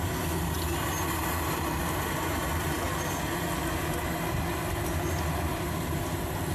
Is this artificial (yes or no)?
no